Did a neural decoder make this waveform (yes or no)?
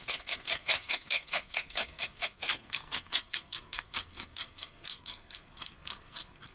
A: yes